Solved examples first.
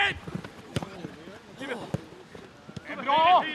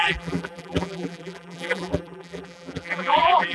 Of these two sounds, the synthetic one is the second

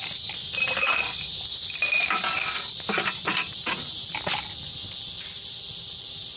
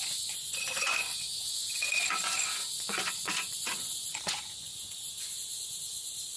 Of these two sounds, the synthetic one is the second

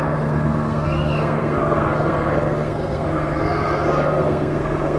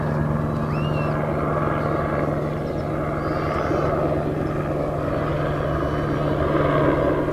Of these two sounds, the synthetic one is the first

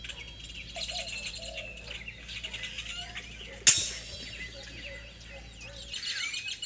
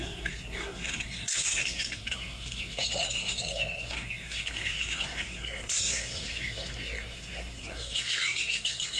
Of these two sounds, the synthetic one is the second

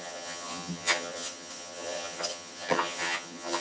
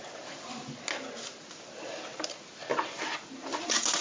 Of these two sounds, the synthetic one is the first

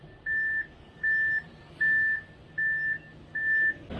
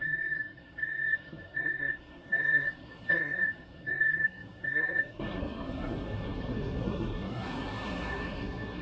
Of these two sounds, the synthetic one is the second